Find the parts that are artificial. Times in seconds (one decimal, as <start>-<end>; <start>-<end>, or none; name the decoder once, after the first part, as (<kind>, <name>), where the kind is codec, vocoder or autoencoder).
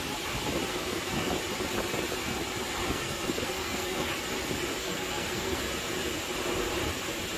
0.7-1.3 (codec, SNAC); 2.8-4.1; 4.8-5.7